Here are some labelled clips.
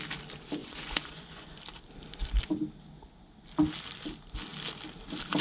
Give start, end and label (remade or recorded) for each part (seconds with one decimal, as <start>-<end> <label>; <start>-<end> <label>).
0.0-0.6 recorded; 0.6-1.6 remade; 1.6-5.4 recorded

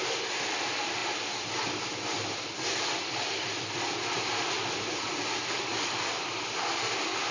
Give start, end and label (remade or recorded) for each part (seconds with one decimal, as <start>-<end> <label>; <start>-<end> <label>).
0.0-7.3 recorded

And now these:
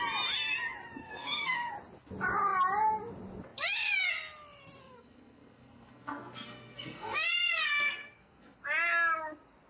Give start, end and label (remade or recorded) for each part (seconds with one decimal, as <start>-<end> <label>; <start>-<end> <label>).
0.0-1.0 recorded; 1.0-1.7 remade; 1.7-4.8 recorded; 4.8-8.6 remade; 8.6-9.7 recorded

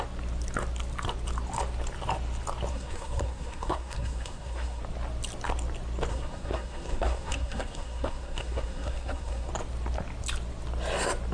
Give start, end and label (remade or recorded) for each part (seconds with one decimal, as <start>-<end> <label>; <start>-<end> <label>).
0.0-2.7 recorded; 2.7-4.8 remade; 4.8-6.1 recorded; 6.1-9.5 remade; 9.5-11.3 recorded

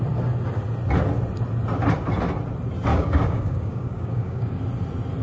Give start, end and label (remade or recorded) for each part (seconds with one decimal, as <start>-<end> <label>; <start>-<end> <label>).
0.0-2.9 recorded; 2.9-4.6 remade; 4.6-5.2 recorded

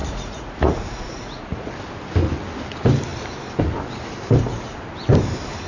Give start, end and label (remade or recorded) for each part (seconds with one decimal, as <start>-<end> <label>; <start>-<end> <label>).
0.0-1.7 remade; 1.7-5.7 recorded